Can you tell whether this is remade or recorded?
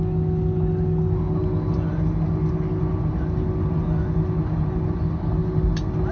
recorded